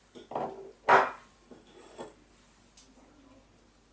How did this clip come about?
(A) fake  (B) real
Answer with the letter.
B